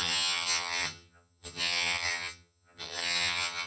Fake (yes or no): yes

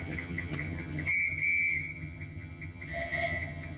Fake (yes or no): yes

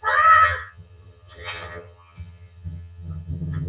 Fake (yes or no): yes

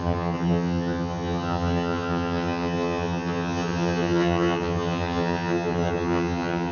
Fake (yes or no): yes